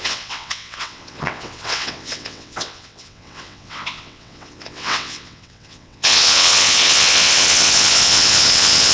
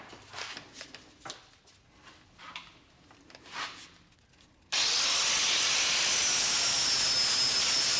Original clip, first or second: second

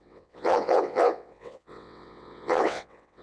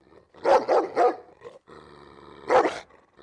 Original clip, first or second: second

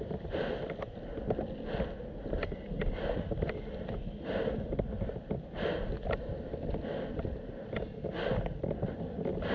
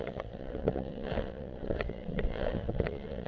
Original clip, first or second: first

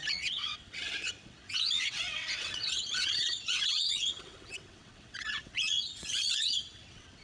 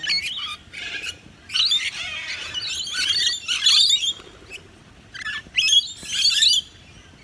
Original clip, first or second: second